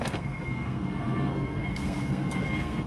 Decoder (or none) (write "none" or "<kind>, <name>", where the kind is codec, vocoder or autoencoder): codec, SNAC